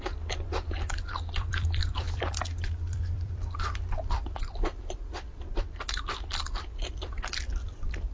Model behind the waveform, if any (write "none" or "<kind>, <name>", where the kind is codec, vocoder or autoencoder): vocoder, BigVGAN v2